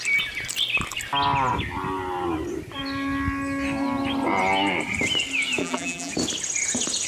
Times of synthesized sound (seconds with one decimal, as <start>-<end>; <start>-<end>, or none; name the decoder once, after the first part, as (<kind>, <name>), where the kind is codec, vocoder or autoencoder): 5.6-6.1 (vocoder, BigVGAN v2)